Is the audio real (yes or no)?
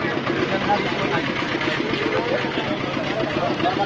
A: yes